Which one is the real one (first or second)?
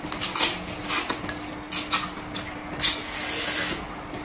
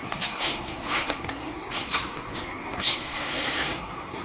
first